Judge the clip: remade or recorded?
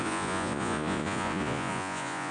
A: remade